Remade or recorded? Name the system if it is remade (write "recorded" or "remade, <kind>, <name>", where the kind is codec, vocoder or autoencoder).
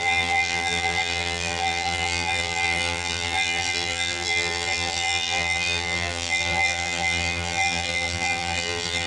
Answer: remade, vocoder, BigVGAN v2